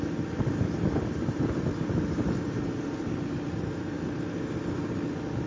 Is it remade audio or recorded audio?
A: recorded